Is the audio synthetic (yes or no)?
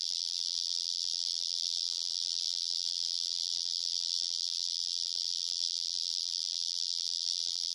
yes